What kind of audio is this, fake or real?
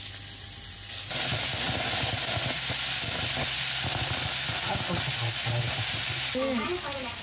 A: real